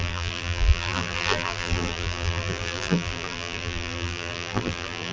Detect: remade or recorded remade